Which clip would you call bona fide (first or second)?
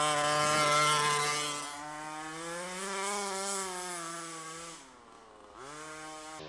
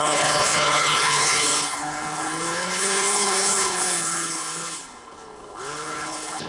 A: first